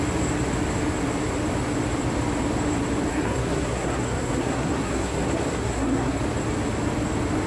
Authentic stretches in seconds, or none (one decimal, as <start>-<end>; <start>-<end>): 0.0-3.1; 6.2-7.5